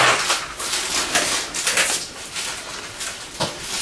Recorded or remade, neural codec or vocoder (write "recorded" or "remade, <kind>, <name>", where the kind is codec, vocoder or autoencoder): recorded